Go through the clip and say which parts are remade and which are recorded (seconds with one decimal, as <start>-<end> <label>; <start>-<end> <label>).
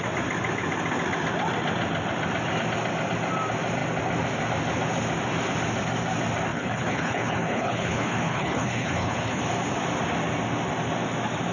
0.0-6.5 recorded; 6.5-9.4 remade; 9.4-11.5 recorded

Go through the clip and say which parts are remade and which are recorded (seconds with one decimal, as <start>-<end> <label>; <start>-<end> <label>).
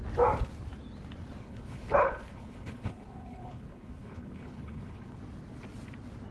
0.0-1.4 recorded; 1.4-5.2 remade; 5.2-6.3 recorded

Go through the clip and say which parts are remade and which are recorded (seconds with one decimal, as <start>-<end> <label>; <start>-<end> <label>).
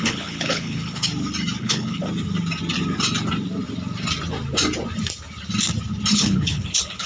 0.0-1.1 remade; 1.1-1.6 recorded; 1.6-2.0 remade; 2.0-6.1 recorded; 6.1-7.1 remade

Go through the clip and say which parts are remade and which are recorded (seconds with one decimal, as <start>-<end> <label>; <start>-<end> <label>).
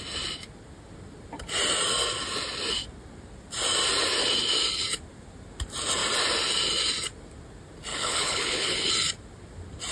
0.0-7.9 recorded; 7.9-8.9 remade; 8.9-9.9 recorded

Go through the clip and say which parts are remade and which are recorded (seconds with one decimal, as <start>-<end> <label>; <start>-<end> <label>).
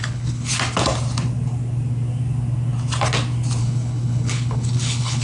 0.0-0.5 remade; 0.5-3.6 recorded; 3.6-5.2 remade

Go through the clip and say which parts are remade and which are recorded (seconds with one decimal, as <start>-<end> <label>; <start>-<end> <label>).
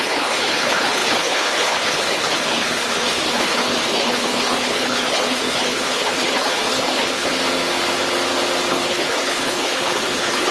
0.0-7.4 remade; 7.4-8.7 recorded; 8.7-10.5 remade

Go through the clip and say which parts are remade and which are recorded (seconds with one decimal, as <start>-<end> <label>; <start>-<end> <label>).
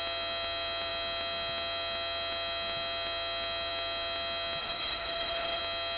0.0-4.6 recorded; 4.6-5.6 remade; 5.6-6.0 recorded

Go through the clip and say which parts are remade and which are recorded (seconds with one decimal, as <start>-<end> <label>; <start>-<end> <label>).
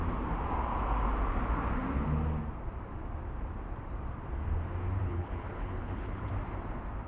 0.0-5.0 recorded; 5.0-6.3 remade; 6.3-7.1 recorded